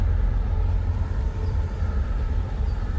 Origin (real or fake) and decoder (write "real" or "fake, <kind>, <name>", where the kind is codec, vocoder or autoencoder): fake, vocoder, BigVGAN v2